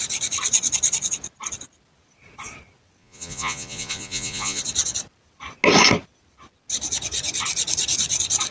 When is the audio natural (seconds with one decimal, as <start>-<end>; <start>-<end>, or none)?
0.0-3.0; 4.6-8.5